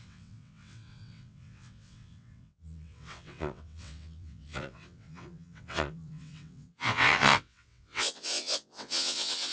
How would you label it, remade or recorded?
remade